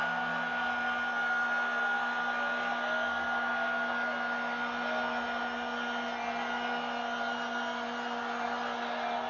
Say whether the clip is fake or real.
real